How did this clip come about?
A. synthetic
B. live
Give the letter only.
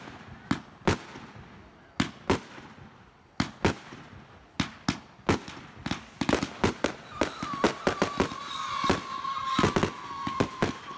B